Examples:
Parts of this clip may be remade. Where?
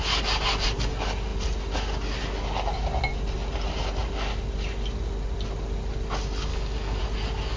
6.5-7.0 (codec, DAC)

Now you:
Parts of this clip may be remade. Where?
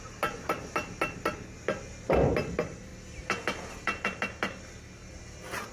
none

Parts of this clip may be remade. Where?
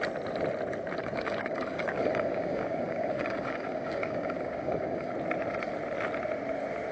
1.0-5.1 (codec, DAC)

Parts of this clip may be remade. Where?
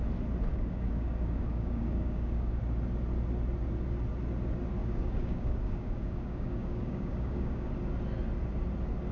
0.5-2.6 (codec, DAC); 4.8-7.7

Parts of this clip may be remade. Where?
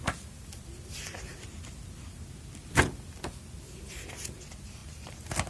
none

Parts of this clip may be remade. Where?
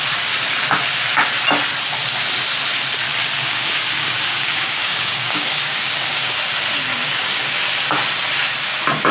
3.1-6.3 (codec, DAC); 6.9-7.7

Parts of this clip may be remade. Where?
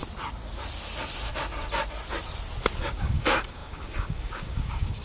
3.0-5.0 (codec, DAC)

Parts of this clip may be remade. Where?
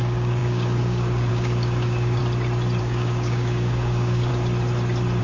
0.0-2.2 (codec, DAC); 2.8-4.3